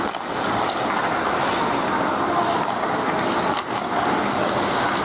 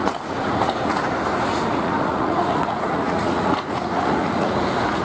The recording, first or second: first